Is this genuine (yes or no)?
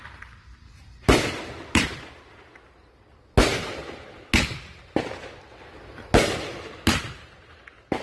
yes